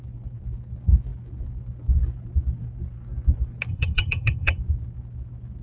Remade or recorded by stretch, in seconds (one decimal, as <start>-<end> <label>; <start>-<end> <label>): 0.0-3.7 recorded; 3.7-4.6 remade; 4.6-5.6 recorded